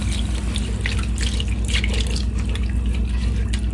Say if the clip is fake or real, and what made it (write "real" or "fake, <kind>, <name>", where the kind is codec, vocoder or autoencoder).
real